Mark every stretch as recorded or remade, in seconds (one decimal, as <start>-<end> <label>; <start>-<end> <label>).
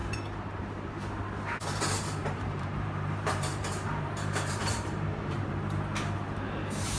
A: 0.0-0.9 remade; 0.9-2.2 recorded; 2.2-5.5 remade; 5.5-7.0 recorded